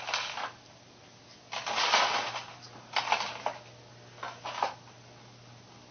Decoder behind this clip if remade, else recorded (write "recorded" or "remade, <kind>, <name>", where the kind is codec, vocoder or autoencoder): recorded